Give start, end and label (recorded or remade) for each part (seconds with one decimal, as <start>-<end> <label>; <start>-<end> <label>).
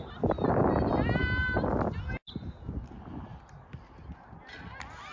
0.0-5.1 recorded